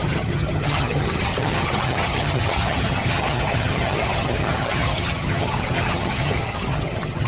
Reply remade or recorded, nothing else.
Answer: remade